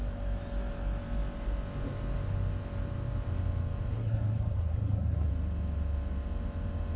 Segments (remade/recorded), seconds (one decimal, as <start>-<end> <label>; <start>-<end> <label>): 0.0-3.9 recorded; 3.9-5.3 remade; 5.3-7.0 recorded